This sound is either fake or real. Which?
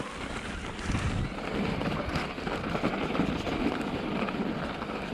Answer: real